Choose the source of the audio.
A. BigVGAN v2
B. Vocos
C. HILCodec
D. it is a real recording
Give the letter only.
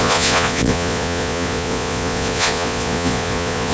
B